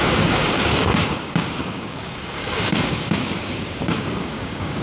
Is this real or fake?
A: fake